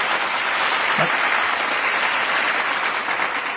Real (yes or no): yes